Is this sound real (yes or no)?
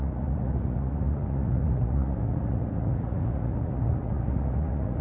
no